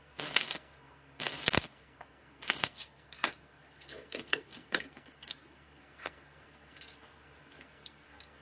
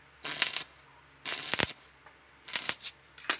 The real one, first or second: second